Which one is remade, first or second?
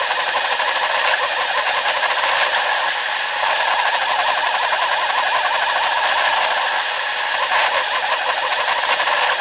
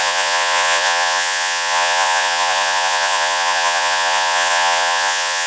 second